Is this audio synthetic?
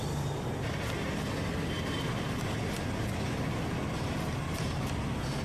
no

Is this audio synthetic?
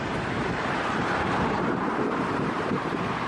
yes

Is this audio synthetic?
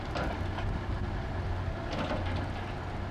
no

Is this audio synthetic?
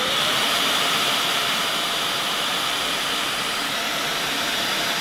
yes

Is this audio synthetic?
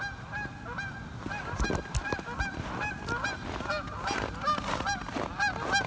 no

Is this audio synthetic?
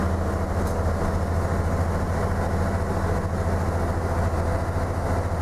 no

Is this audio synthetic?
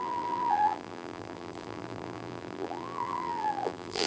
yes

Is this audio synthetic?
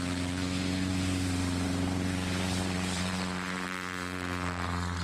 yes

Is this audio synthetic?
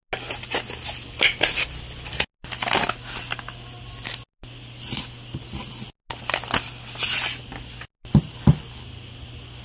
no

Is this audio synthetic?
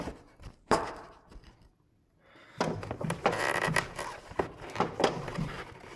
yes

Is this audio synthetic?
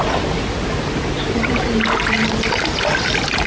no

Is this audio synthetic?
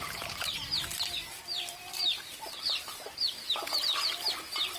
yes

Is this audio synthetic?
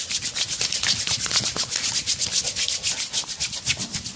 no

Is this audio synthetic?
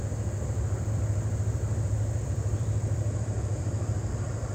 yes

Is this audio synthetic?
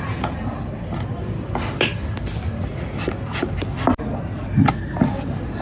no